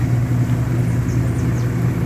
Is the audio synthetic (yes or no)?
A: no